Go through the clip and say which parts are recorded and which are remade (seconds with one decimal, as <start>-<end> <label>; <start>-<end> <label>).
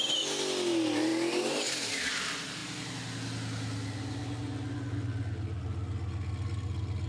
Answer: 0.0-7.1 recorded